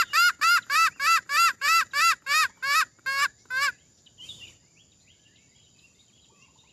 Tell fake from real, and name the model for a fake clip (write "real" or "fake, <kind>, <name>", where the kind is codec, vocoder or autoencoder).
real